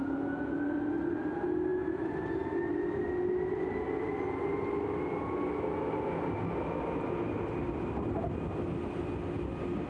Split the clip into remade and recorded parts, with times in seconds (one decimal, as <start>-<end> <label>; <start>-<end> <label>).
0.0-9.9 recorded